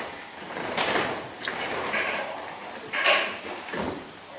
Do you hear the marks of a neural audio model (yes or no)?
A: no